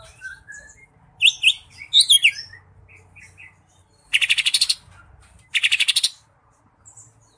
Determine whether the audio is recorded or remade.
recorded